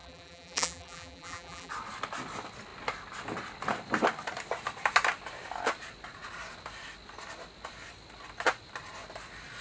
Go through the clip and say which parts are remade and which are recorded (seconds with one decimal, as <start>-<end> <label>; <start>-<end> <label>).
0.0-1.7 remade; 1.7-9.6 recorded